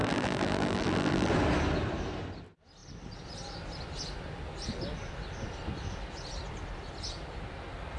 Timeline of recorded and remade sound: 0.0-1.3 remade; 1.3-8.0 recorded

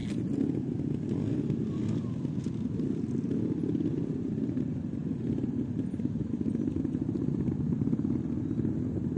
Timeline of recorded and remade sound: 0.0-4.0 recorded; 4.0-9.2 remade

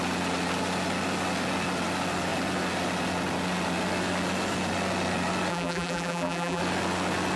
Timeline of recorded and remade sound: 0.0-5.5 recorded; 5.5-6.6 remade; 6.6-7.4 recorded

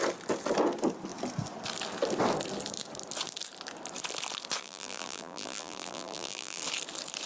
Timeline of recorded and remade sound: 0.0-4.6 recorded; 4.6-6.6 remade; 6.6-7.3 recorded

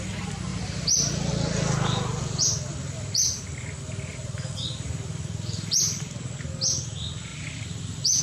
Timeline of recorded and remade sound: 0.0-0.5 recorded; 0.5-1.3 remade; 1.3-4.1 recorded; 4.1-6.1 remade; 6.1-7.3 recorded; 7.3-8.2 remade

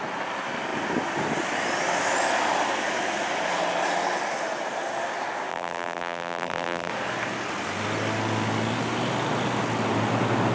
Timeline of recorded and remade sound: 0.0-5.5 recorded; 5.5-6.9 remade; 6.9-10.5 recorded

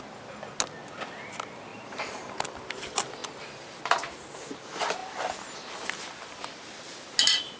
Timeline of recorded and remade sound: 0.0-1.7 recorded; 1.7-2.4 remade; 2.4-3.2 recorded; 3.2-3.8 remade; 3.8-7.6 recorded

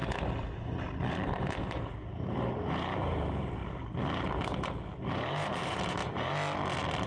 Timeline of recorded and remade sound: 0.0-1.1 recorded; 1.1-3.6 remade; 3.6-5.1 recorded; 5.1-6.0 remade; 6.0-7.1 recorded